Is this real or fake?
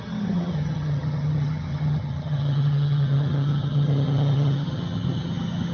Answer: fake